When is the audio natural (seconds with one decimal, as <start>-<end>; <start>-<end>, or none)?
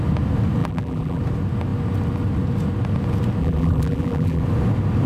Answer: 0.0-0.6; 1.2-3.4; 4.4-5.1